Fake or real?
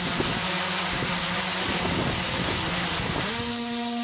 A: real